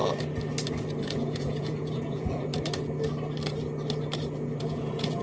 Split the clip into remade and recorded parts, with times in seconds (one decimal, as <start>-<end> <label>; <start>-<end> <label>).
0.0-1.0 recorded; 1.0-2.5 remade; 2.5-4.6 recorded; 4.6-5.2 remade